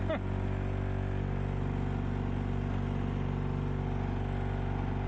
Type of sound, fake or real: real